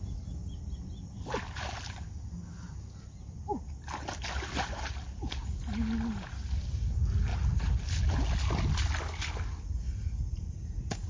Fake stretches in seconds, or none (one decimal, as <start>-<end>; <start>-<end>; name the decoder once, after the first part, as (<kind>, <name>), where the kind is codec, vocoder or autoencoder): none